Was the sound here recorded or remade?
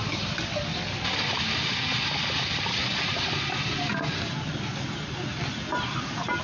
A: recorded